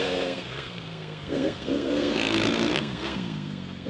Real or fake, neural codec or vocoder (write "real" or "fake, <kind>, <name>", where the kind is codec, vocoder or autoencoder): fake, codec, SNAC